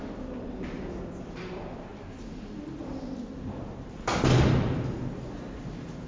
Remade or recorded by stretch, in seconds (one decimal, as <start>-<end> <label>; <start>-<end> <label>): 0.0-6.1 recorded

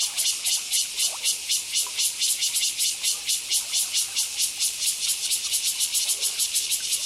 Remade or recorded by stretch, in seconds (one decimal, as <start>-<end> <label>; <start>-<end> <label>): 0.0-7.1 recorded

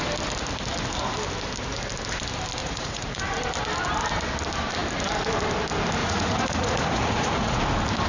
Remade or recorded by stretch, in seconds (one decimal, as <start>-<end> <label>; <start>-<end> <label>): 0.0-2.6 recorded; 2.6-3.2 remade; 3.2-6.0 recorded; 6.0-7.6 remade; 7.6-8.1 recorded